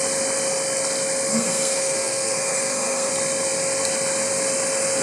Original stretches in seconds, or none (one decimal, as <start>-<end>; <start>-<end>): 0.0-1.3; 3.1-5.0

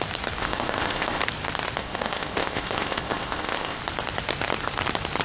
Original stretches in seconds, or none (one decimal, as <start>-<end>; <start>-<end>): 0.0-0.4; 1.2-1.8; 3.8-5.2

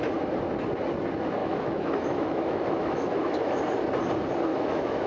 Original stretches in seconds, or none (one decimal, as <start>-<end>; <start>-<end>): 0.0-1.4; 3.6-4.5

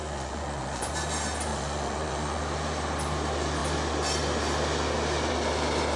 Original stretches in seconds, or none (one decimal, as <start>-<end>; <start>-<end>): 0.9-1.5; 2.4-6.0